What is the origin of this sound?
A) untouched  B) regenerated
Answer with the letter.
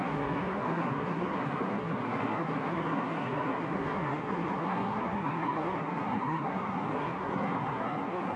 B